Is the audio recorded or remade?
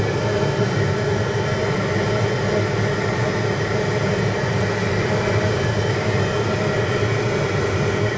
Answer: recorded